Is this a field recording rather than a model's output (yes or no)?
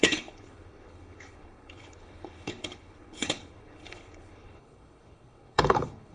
no